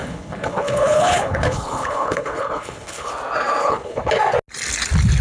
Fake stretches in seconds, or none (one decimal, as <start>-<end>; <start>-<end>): 0.0-3.1; 3.6-4.1